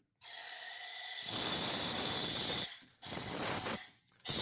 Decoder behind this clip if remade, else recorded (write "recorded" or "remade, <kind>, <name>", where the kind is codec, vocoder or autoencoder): recorded